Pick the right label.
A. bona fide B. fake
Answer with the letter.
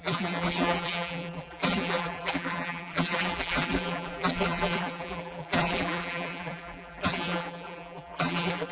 B